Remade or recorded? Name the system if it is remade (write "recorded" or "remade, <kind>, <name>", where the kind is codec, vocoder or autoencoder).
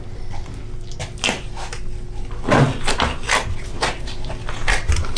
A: recorded